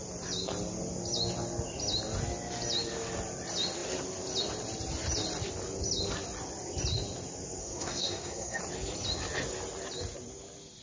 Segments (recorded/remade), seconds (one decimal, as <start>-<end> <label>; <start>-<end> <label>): 0.0-7.6 recorded; 7.6-8.6 remade; 8.6-10.8 recorded